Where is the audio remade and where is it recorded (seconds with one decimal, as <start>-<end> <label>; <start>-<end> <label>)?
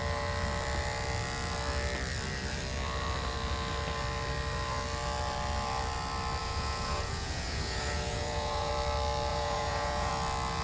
0.0-6.4 recorded; 6.4-8.7 remade; 8.7-9.3 recorded; 9.3-10.1 remade; 10.1-10.6 recorded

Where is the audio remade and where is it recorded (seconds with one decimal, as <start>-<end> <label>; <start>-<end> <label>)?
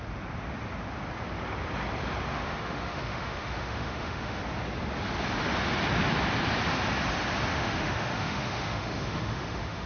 0.0-2.3 recorded; 2.3-4.4 remade; 4.4-7.5 recorded; 7.5-9.9 remade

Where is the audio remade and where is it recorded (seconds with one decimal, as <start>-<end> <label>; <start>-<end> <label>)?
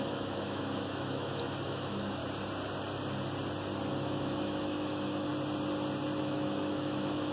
0.0-2.2 remade; 2.2-3.9 recorded; 3.9-5.3 remade; 5.3-6.2 recorded; 6.2-7.3 remade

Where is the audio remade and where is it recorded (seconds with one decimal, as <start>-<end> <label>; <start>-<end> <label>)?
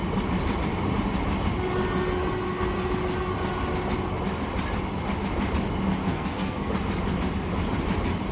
0.0-6.1 recorded; 6.1-6.7 remade; 6.7-8.3 recorded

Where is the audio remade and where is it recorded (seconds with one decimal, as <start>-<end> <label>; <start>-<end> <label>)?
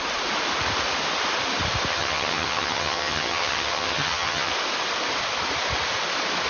0.0-1.9 recorded; 1.9-4.5 remade; 4.5-6.5 recorded